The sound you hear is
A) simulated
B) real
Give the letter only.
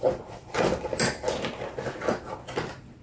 B